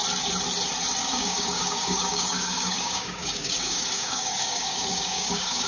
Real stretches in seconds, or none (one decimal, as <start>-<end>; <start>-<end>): 0.0-1.0